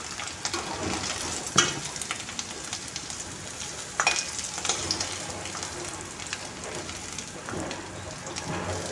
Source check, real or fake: real